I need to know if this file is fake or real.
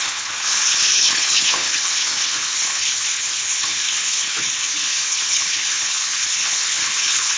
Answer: fake